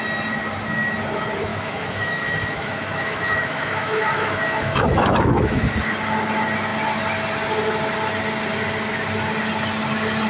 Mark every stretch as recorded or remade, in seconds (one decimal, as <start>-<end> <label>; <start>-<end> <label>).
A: 0.0-1.5 recorded; 1.5-5.7 remade; 5.7-10.3 recorded